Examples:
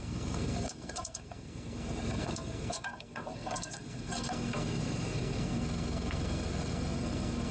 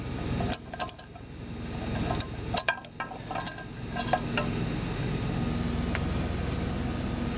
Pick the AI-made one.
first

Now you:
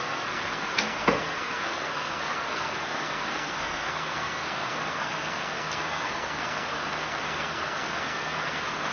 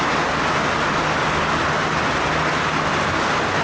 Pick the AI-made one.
first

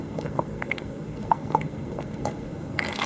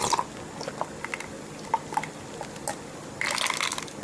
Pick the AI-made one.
first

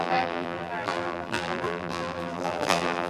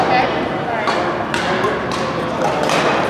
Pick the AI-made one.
first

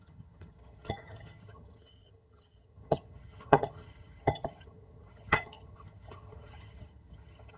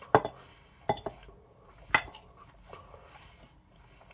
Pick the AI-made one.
first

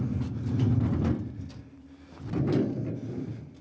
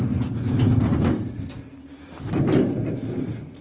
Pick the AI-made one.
second